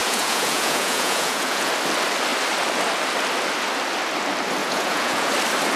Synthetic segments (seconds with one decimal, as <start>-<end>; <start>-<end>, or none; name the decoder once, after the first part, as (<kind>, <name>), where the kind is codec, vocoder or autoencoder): 0.0-1.7 (vocoder, Vocos); 4.6-5.3